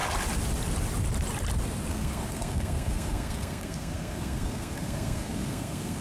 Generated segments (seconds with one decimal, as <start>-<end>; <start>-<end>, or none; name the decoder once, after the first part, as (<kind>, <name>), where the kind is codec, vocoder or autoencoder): 1.9-6.0 (codec, SNAC)